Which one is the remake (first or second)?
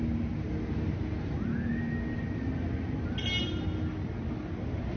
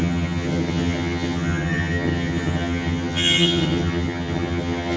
second